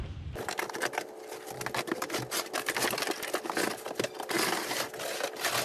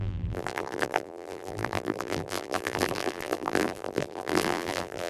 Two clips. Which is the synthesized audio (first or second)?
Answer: second